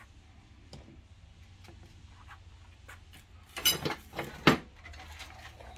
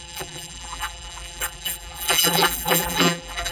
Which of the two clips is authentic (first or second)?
first